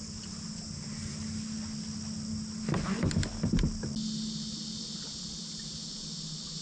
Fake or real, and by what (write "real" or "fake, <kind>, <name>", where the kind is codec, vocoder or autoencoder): real